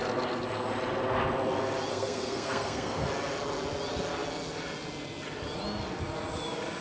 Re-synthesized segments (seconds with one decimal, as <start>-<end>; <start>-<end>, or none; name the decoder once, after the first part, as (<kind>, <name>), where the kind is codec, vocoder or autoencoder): 1.9-3.1 (codec, SNAC)